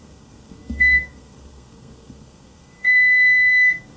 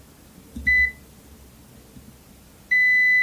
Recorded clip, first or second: second